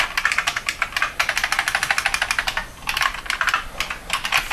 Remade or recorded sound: recorded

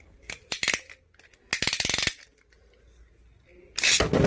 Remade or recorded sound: recorded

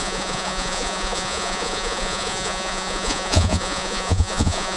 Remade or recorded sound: remade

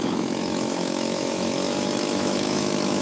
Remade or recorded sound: remade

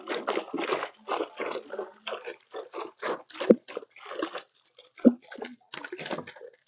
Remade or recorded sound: recorded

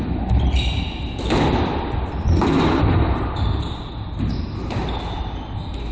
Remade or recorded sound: recorded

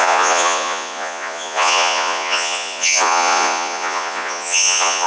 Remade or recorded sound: remade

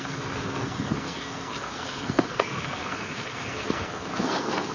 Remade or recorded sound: remade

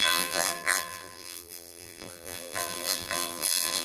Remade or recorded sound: remade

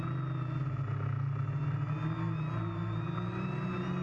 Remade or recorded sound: recorded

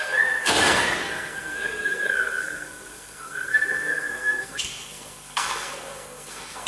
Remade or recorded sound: remade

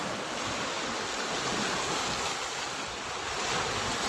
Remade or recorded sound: recorded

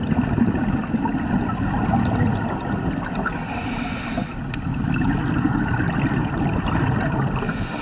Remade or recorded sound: recorded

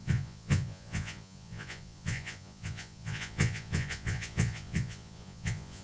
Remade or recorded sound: remade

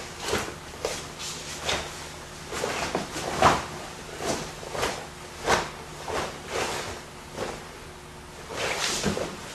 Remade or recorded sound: recorded